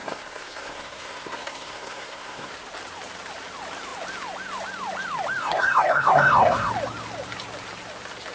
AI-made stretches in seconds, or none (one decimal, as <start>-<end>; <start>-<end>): 0.0-2.5; 5.4-6.7